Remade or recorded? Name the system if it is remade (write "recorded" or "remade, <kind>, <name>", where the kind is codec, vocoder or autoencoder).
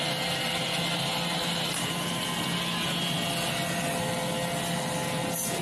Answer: recorded